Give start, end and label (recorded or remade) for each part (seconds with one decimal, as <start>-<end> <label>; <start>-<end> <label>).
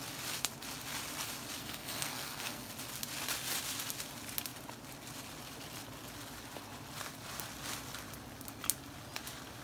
0.0-1.6 recorded; 1.6-2.7 remade; 2.7-9.6 recorded